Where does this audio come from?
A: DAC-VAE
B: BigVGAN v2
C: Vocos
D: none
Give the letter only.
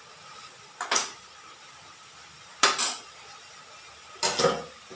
D